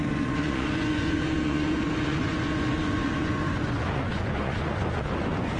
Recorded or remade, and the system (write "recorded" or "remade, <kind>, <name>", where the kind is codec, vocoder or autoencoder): remade, vocoder, Vocos